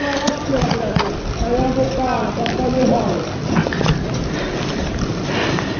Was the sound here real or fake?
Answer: real